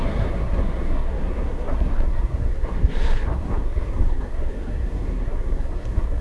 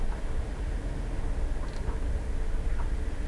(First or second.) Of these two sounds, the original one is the second